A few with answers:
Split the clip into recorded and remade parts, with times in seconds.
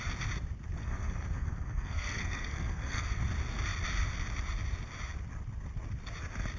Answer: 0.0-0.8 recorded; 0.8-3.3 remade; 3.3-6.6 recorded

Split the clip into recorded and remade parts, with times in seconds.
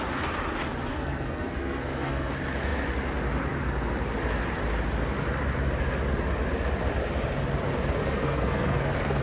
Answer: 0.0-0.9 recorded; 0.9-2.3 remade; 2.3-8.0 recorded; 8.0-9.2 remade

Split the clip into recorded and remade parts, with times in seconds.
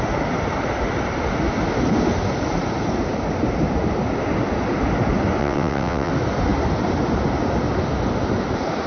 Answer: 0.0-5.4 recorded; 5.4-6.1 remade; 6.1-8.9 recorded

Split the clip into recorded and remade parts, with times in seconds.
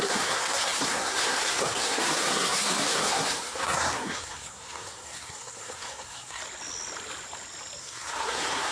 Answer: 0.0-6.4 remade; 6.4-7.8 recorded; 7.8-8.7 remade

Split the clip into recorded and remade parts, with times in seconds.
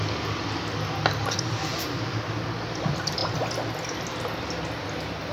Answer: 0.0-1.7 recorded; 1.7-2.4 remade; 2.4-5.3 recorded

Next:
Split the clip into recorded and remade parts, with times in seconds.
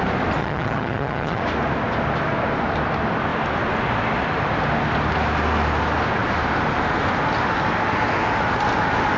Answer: 0.0-0.4 recorded; 0.4-1.4 remade; 1.4-9.2 recorded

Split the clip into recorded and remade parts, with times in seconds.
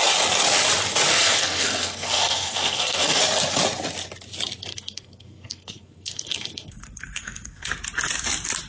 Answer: 0.0-1.1 recorded; 1.1-3.2 remade; 3.2-4.7 recorded; 4.7-7.7 remade; 7.7-8.7 recorded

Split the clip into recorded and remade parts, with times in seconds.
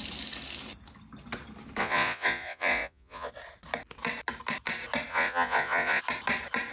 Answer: 0.0-1.8 recorded; 1.8-3.3 remade; 3.3-5.1 recorded; 5.1-6.0 remade; 6.0-6.7 recorded